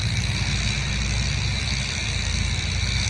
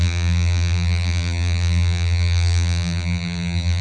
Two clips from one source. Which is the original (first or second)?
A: first